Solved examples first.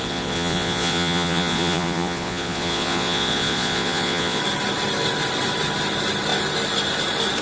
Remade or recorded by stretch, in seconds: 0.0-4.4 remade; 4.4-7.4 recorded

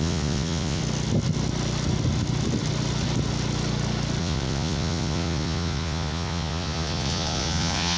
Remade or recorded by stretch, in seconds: 0.0-0.8 remade; 0.8-4.2 recorded; 4.2-8.0 remade

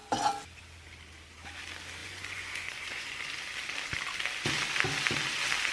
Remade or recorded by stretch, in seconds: 0.0-2.0 recorded; 2.0-3.3 remade; 3.3-5.7 recorded

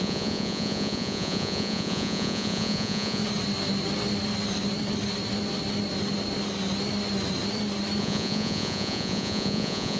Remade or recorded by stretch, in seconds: 0.0-3.2 remade; 3.2-8.0 recorded; 8.0-10.0 remade

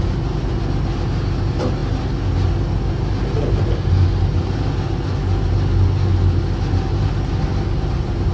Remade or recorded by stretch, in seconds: 0.0-8.3 recorded

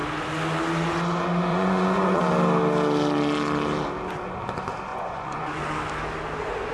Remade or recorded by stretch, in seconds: 0.0-1.5 recorded; 1.5-2.2 remade; 2.2-4.9 recorded; 4.9-5.6 remade; 5.6-6.7 recorded

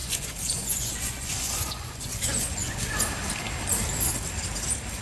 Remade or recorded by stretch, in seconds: 0.0-2.9 remade; 2.9-5.0 recorded

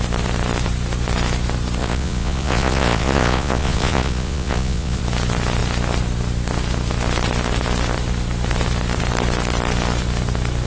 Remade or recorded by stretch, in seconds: 0.0-1.8 recorded; 1.8-5.0 remade; 5.0-10.7 recorded